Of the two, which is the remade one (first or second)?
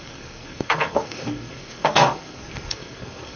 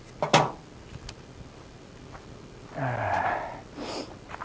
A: first